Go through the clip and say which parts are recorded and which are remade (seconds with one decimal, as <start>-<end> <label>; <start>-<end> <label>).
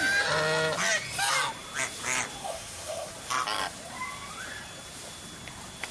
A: 0.0-2.4 recorded; 2.4-3.1 remade; 3.1-5.9 recorded